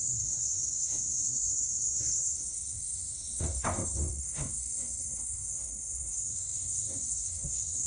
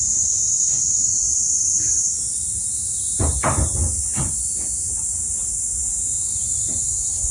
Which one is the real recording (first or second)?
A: second